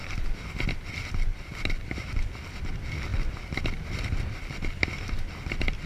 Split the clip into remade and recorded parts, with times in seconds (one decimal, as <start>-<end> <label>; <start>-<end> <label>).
0.0-0.7 remade; 0.7-1.3 recorded; 1.3-2.2 remade; 2.2-5.9 recorded